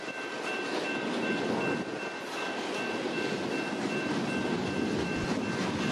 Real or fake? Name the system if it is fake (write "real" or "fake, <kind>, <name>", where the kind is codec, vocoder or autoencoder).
real